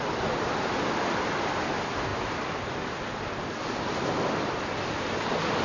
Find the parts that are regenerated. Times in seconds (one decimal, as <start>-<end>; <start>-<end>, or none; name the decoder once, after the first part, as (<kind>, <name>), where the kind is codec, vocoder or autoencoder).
none